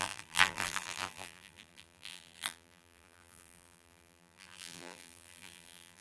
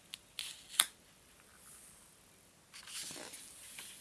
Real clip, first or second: second